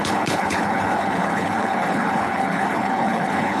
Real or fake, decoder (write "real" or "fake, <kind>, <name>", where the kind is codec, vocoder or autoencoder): fake, codec, HILCodec